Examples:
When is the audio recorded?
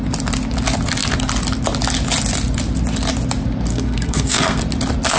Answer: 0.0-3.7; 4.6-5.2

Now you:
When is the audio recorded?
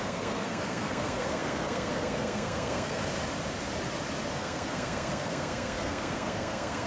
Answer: 3.0-4.3